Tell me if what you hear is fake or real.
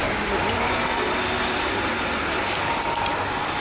real